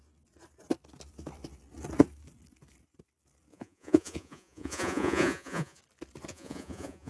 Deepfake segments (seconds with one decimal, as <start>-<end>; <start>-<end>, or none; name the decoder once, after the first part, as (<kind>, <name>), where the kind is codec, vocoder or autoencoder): 3.5-5.8 (vocoder, Vocos); 6.3-7.1